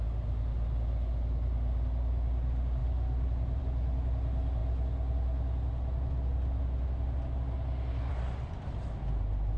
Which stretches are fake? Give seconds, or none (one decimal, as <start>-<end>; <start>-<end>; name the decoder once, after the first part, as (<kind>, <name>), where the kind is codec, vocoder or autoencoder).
none